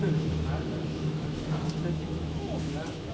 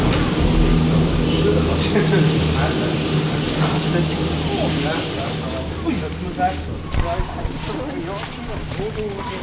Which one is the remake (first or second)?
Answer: first